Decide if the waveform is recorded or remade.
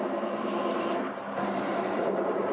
remade